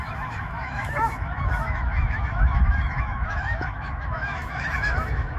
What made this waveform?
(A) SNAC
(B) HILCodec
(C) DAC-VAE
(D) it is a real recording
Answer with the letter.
C